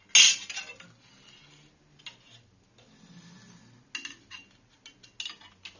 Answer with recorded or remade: recorded